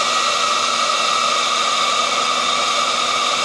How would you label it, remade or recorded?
recorded